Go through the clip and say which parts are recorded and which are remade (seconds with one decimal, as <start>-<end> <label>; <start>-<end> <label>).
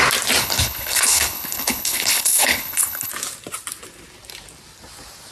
0.0-0.4 recorded; 0.4-3.1 remade; 3.1-5.3 recorded